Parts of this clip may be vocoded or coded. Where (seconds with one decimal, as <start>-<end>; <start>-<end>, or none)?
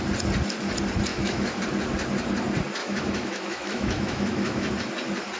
1.1-1.6; 2.8-4.7